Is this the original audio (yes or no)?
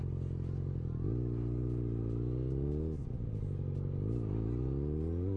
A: yes